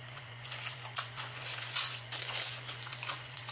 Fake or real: fake